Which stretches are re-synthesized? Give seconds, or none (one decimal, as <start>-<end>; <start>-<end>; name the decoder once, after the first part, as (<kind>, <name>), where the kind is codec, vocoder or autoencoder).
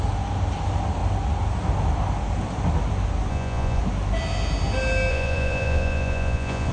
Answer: 3.3-3.8 (vocoder, Vocos); 5.1-6.7